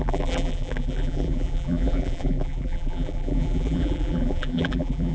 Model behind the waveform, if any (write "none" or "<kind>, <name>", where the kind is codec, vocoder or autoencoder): vocoder, BigVGAN v2